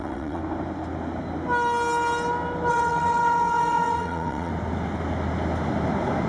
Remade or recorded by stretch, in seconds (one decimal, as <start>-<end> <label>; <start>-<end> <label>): 0.0-0.4 remade; 0.4-2.7 recorded; 2.7-4.5 remade; 4.5-6.3 recorded